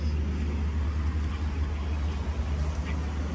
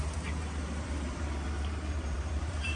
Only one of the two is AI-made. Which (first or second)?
second